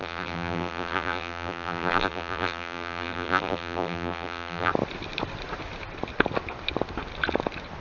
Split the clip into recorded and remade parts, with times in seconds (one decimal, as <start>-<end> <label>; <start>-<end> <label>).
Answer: 0.0-4.7 remade; 4.7-7.8 recorded